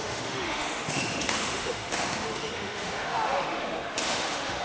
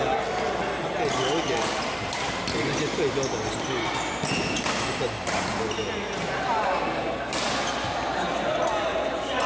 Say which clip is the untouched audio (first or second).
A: second